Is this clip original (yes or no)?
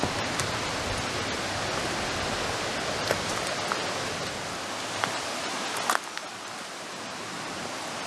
yes